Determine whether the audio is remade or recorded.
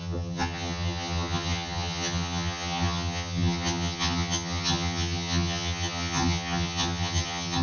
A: remade